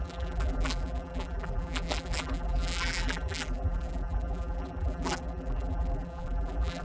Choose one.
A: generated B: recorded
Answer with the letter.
A